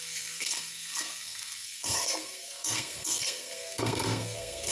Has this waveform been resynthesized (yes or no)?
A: yes